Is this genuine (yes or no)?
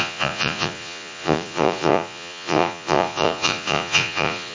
no